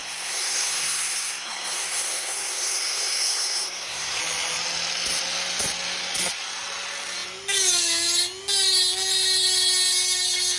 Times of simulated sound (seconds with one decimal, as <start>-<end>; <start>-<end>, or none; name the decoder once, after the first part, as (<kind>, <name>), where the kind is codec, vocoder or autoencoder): 0.0-4.2 (codec, SNAC)